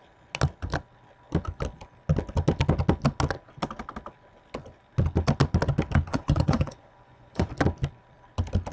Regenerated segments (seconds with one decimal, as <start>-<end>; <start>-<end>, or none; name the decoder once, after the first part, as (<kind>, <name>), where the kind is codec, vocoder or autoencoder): 6.1-7.5 (vocoder, Vocos)